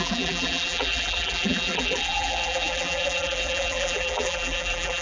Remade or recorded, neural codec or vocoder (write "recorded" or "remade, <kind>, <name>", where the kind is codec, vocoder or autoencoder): remade, vocoder, BigVGAN v2